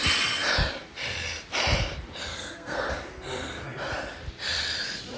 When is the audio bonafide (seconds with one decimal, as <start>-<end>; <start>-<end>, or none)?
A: 0.0-2.3; 2.9-5.2

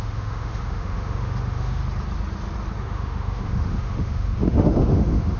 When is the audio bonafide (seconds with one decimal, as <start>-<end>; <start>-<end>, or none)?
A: 1.8-2.8

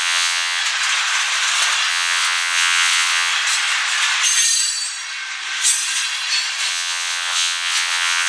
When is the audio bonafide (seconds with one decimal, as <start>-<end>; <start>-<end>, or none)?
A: 0.6-1.9; 3.3-6.7

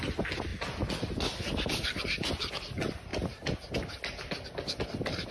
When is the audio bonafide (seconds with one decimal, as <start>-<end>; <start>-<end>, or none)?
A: 0.0-5.3

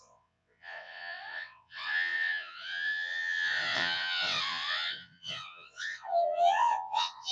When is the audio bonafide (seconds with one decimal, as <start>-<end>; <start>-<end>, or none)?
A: none

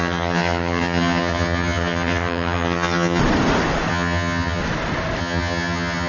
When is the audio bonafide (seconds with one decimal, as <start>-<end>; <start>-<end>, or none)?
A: 3.2-3.9; 4.6-5.2

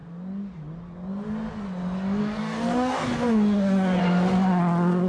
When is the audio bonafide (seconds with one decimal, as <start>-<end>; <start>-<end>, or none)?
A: 0.0-2.2; 4.0-5.1

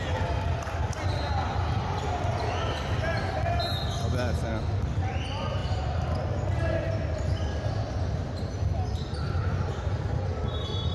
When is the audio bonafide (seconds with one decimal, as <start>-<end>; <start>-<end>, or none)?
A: 0.0-10.9